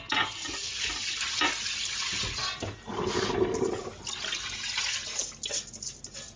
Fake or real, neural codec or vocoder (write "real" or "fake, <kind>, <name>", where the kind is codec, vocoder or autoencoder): real